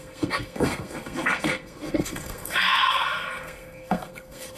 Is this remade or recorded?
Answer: remade